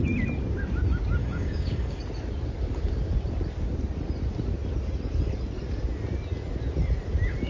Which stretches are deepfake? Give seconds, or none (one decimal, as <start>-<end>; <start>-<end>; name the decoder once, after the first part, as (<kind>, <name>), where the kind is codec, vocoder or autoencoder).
1.2-2.0 (codec, DAC)